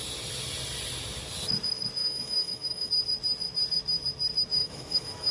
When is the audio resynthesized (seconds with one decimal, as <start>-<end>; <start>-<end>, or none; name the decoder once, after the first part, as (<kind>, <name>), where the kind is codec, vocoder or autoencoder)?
2.0-2.9 (autoencoder, DAC-VAE); 4.6-5.3